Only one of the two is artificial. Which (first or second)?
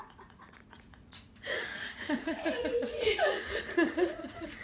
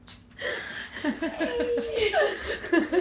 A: first